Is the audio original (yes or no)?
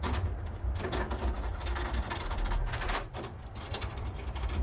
yes